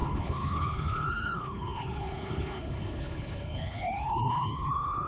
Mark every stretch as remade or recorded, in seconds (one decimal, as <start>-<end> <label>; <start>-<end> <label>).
0.0-5.1 remade